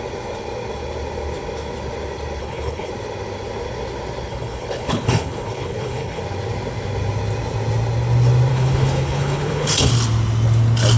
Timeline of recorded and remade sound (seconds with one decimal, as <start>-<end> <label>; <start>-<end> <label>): 0.0-2.4 recorded; 2.4-2.9 remade; 2.9-4.3 recorded; 4.3-6.2 remade; 6.2-8.5 recorded; 8.5-9.9 remade; 9.9-11.0 recorded